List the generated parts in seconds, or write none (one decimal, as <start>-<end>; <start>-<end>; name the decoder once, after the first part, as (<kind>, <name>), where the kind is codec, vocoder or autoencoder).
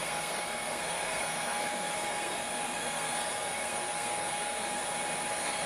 0.0-4.8 (codec, SNAC); 5.3-5.7